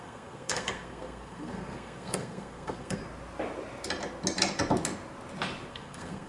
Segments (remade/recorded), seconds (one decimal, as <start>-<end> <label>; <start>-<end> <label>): 0.0-3.0 remade; 3.0-5.7 recorded; 5.7-6.3 remade

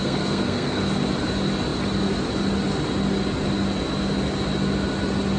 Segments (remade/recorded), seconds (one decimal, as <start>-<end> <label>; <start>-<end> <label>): 0.0-0.8 remade; 0.8-5.4 recorded

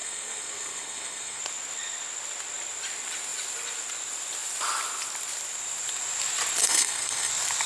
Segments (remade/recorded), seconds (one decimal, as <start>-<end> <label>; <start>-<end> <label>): 0.0-1.4 remade; 1.4-6.6 recorded; 6.6-7.3 remade; 7.3-7.7 recorded

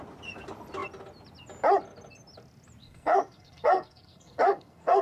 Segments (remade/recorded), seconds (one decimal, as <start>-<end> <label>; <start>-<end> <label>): 0.0-2.8 recorded; 2.8-5.0 remade

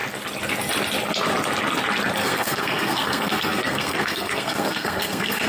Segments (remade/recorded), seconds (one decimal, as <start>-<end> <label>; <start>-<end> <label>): 0.0-2.2 recorded; 2.2-5.5 remade

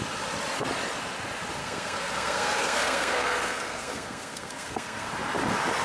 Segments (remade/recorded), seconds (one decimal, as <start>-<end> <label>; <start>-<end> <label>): 0.0-1.6 recorded; 1.6-5.1 remade; 5.1-5.8 recorded